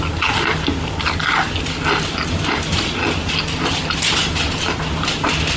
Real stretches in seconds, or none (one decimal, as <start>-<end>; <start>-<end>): 0.0-5.6